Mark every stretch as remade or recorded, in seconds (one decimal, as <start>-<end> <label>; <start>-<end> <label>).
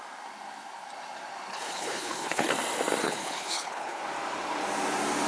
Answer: 0.0-1.5 recorded; 1.5-2.5 remade; 2.5-3.0 recorded; 3.0-4.0 remade; 4.0-5.3 recorded